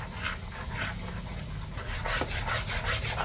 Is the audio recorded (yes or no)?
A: yes